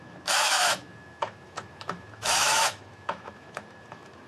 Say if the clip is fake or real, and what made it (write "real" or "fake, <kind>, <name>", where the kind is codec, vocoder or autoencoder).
fake, autoencoder, DAC-VAE